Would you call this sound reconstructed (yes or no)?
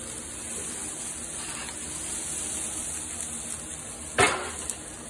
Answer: no